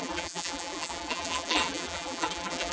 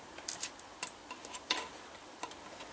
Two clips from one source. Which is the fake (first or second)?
first